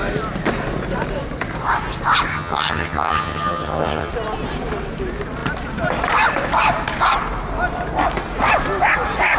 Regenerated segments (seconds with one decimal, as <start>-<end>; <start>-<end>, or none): 2.3-4.1